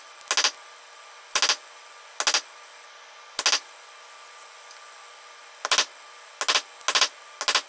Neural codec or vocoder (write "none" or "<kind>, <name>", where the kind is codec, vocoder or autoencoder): none